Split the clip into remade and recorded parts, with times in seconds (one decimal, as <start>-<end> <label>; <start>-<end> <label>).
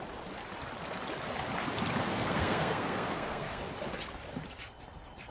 0.0-2.1 recorded; 2.1-3.6 remade; 3.6-5.3 recorded